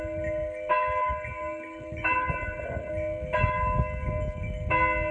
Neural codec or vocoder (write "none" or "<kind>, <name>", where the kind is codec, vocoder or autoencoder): none